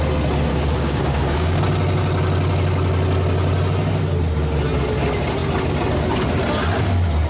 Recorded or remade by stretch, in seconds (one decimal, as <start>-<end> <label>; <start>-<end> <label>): 0.0-0.5 recorded; 0.5-1.6 remade; 1.6-7.3 recorded